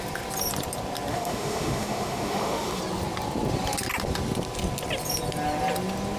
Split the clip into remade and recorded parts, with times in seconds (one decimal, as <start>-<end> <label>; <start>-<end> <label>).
0.0-1.1 recorded; 1.1-2.8 remade; 2.8-6.2 recorded